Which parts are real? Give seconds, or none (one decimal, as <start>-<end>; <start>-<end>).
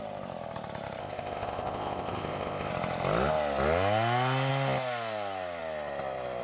0.0-1.0; 2.7-6.4